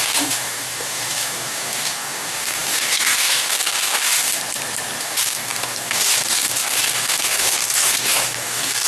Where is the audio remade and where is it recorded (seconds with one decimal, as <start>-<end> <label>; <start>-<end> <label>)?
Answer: 0.0-4.4 remade; 4.4-5.0 recorded; 5.0-8.9 remade